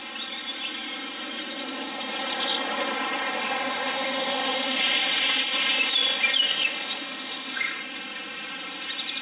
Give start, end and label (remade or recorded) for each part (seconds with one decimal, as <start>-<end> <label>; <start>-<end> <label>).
0.0-3.4 recorded; 3.4-4.8 remade; 4.8-6.5 recorded; 6.5-7.8 remade; 7.8-9.2 recorded